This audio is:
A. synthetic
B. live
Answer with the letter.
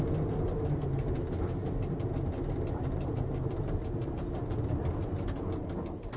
B